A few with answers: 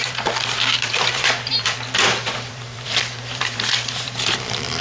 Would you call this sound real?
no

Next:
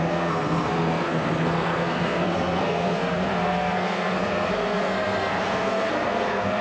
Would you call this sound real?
no